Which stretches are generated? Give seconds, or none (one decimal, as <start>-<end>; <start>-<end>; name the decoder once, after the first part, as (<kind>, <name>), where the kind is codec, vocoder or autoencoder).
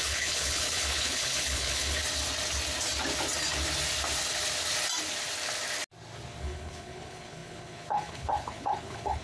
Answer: 0.0-2.0 (codec, HILCodec); 6.4-9.2